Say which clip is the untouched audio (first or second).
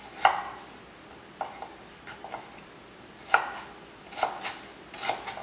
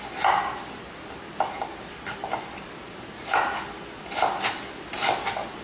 first